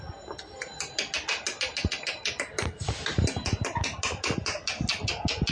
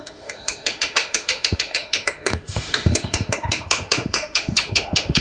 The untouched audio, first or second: first